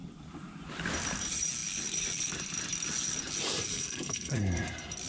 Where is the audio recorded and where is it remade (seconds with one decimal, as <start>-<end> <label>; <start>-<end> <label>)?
0.0-3.7 recorded; 3.7-4.4 remade; 4.4-5.1 recorded

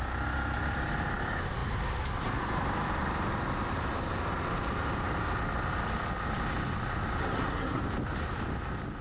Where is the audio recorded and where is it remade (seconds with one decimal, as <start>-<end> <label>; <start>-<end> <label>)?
0.0-7.2 recorded; 7.2-7.8 remade; 7.8-9.0 recorded

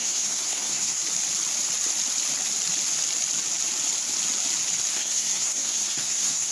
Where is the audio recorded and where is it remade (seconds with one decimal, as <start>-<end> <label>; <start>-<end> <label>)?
0.0-1.0 remade; 1.0-4.9 recorded; 4.9-6.5 remade

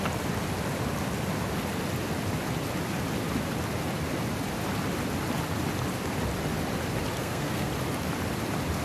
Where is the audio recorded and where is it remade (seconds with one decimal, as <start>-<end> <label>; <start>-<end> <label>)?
0.0-7.2 recorded; 7.2-7.7 remade; 7.7-8.8 recorded

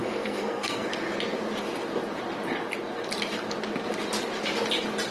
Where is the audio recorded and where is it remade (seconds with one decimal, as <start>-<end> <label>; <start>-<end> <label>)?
0.0-0.9 remade; 0.9-5.1 recorded

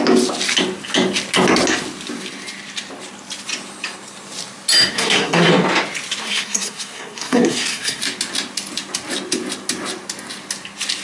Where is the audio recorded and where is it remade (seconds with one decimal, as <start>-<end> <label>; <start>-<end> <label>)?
0.0-4.9 recorded; 4.9-5.5 remade; 5.5-6.2 recorded; 6.2-8.0 remade; 8.0-11.0 recorded

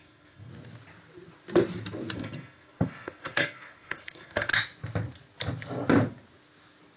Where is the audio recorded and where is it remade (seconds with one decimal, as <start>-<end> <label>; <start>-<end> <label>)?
0.0-0.5 remade; 0.5-2.1 recorded; 2.1-4.5 remade; 4.5-7.0 recorded

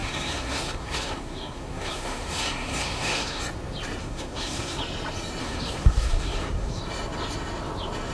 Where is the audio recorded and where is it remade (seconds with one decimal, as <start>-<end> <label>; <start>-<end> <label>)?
0.0-3.4 remade; 3.4-4.0 recorded; 4.0-4.8 remade; 4.8-5.4 recorded; 5.4-6.8 remade; 6.8-8.1 recorded